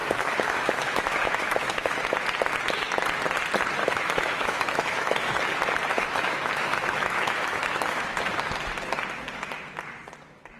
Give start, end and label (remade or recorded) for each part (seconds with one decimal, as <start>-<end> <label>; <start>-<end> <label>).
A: 0.0-2.1 remade; 2.1-3.8 recorded; 3.8-5.4 remade; 5.4-5.9 recorded; 5.9-8.3 remade; 8.3-10.6 recorded